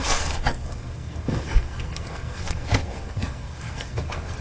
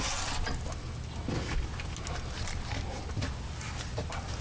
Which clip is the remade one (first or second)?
first